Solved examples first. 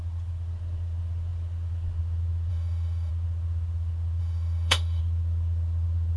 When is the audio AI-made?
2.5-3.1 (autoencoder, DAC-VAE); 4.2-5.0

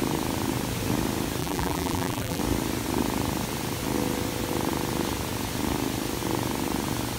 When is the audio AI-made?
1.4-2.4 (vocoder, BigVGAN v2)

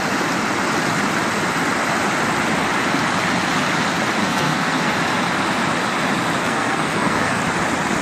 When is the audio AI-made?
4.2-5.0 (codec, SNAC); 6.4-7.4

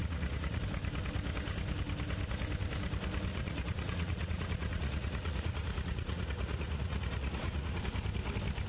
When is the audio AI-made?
0.0-0.6 (vocoder, Vocos); 3.3-7.8